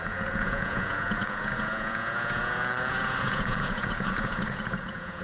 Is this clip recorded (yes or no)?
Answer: no